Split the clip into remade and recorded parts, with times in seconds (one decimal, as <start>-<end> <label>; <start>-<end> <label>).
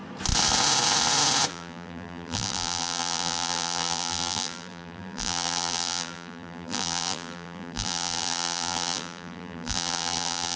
0.0-1.5 recorded; 1.5-10.6 remade